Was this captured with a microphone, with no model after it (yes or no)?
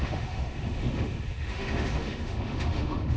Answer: no